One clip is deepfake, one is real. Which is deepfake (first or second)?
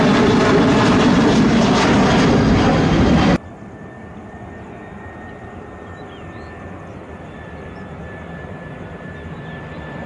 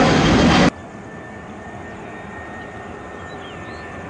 first